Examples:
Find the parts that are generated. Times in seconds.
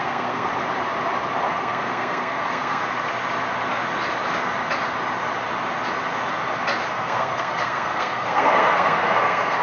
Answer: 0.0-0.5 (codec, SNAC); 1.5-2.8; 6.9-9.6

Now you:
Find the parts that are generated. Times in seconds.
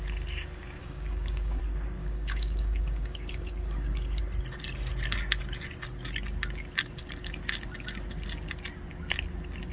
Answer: 0.8-1.6 (codec, DAC); 2.0-4.2